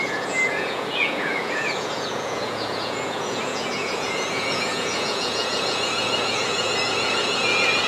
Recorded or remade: remade